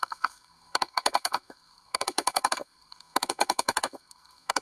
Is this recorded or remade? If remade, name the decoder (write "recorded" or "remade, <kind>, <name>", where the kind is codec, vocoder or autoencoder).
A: remade, codec, SNAC